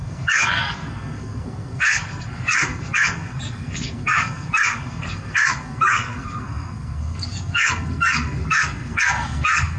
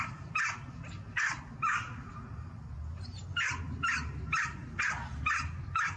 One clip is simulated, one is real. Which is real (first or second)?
second